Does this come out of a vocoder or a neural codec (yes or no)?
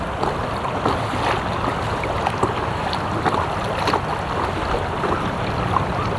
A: no